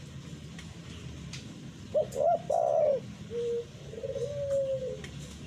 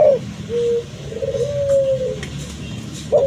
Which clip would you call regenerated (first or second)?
first